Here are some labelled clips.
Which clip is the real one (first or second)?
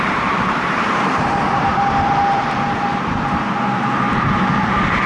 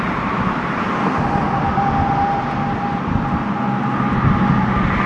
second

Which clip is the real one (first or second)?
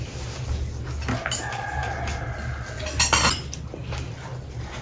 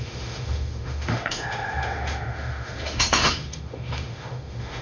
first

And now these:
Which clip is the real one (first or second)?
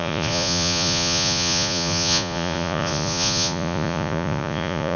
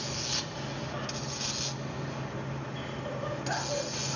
second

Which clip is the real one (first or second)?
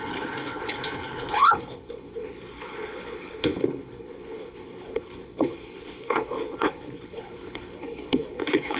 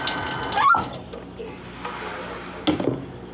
second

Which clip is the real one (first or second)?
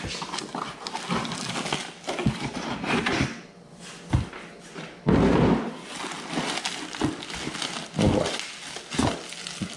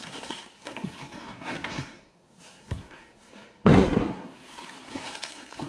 first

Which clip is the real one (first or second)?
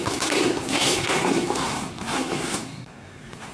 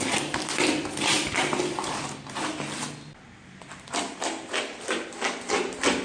second